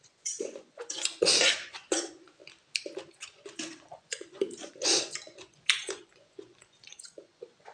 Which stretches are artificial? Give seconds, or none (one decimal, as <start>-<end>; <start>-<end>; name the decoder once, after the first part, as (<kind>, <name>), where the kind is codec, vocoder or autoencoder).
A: 0.0-2.4 (vocoder, Vocos); 3.1-7.7